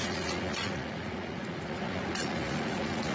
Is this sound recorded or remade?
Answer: remade